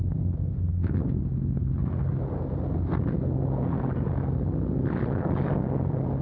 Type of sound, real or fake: real